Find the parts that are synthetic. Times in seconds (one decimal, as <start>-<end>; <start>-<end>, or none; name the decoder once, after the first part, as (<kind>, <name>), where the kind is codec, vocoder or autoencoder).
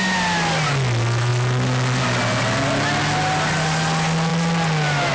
none